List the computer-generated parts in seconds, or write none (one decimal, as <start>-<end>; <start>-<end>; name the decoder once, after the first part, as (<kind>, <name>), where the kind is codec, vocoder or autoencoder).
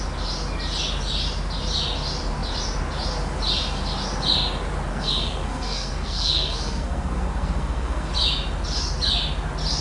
4.9-8.1 (codec, SNAC)